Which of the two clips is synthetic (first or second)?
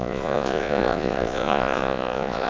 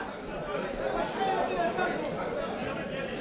first